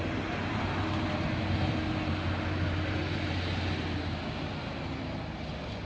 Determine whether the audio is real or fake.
real